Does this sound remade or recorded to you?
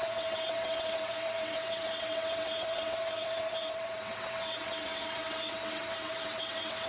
remade